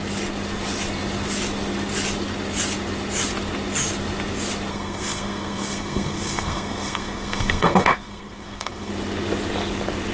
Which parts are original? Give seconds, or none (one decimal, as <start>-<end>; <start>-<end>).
0.0-4.7; 8.9-10.1